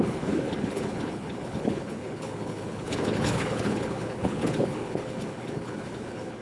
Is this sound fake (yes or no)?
yes